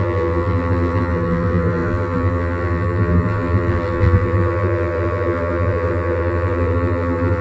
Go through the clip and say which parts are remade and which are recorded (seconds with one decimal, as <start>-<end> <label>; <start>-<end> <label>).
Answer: 0.0-7.4 remade